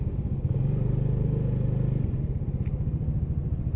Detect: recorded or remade recorded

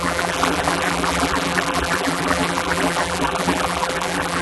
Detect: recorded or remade remade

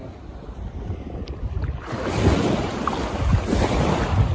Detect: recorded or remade recorded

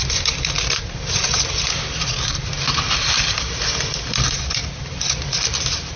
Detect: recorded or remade remade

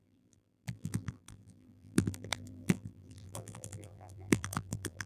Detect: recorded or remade remade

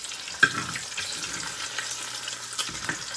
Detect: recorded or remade recorded